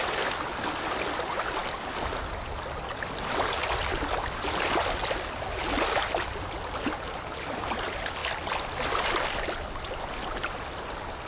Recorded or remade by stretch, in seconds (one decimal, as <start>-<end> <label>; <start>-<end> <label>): 0.0-11.3 recorded